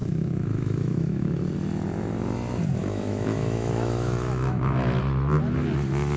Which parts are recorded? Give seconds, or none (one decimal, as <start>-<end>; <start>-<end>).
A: 1.4-2.8; 5.0-6.2